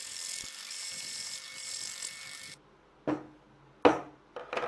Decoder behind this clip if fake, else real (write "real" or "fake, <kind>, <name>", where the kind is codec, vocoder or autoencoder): real